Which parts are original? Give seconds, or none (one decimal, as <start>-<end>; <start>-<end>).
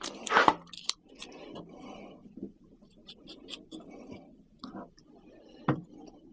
0.0-6.3